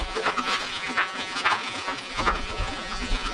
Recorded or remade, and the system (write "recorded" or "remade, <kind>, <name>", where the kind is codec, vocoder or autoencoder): remade, vocoder, Vocos